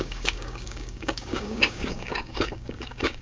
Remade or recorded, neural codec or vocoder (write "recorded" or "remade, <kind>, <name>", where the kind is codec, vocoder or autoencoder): remade, codec, DAC